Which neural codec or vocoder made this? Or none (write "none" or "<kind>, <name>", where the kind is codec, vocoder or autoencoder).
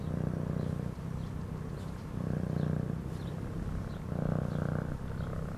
none